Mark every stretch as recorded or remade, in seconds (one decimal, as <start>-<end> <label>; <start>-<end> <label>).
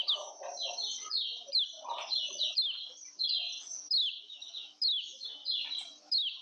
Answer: 0.0-0.4 remade; 0.4-4.2 recorded; 4.2-5.4 remade; 5.4-6.0 recorded; 6.0-6.4 remade